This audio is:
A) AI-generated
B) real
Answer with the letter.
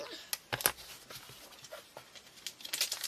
B